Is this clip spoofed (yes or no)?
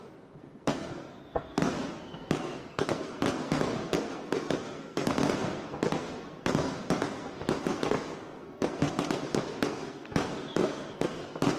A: yes